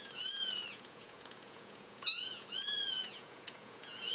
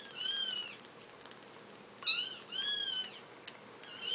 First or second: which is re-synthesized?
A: first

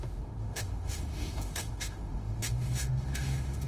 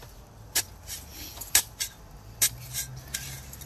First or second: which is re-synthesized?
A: first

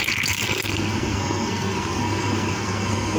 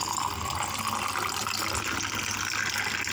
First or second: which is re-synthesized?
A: first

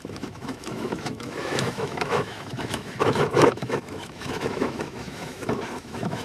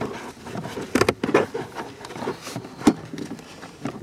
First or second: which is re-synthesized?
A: first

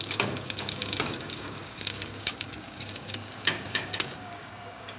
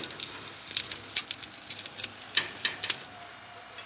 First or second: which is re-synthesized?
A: first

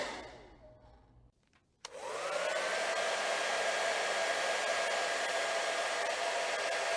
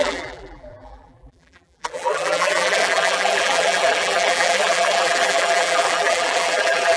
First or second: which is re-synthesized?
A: second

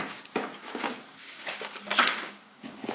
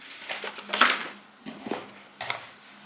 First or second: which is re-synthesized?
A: first